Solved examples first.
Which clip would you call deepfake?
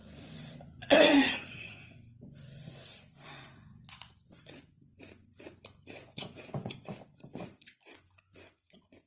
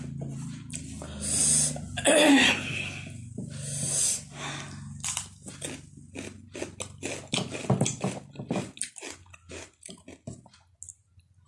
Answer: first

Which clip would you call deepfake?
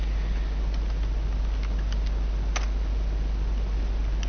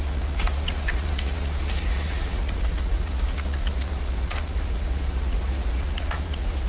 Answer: second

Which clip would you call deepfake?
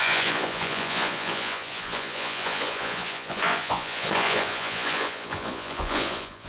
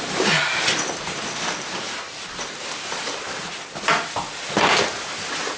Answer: first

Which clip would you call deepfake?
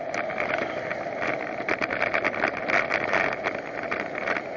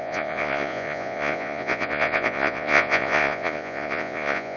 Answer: second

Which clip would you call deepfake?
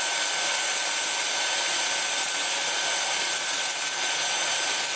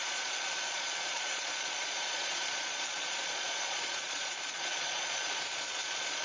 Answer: second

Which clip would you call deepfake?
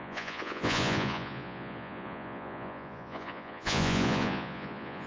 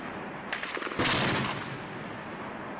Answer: first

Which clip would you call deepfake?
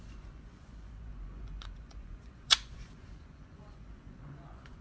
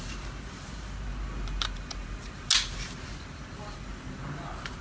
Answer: first